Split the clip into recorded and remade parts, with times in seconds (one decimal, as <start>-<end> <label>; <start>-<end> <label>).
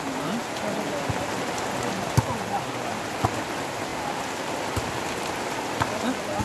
0.0-6.4 recorded